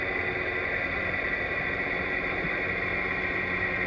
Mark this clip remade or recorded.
recorded